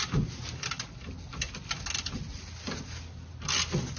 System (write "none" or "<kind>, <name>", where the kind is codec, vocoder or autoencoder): none